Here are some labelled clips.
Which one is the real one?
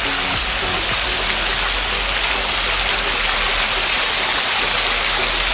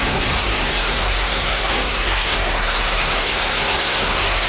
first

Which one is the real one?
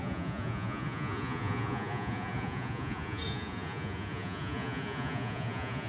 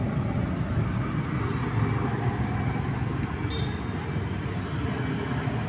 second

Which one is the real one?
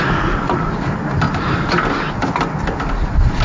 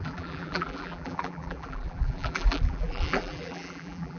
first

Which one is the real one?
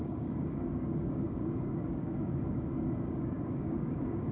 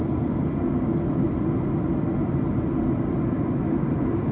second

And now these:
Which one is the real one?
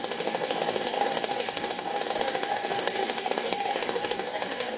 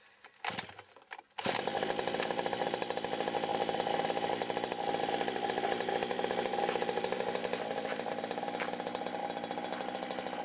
second